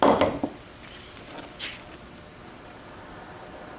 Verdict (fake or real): real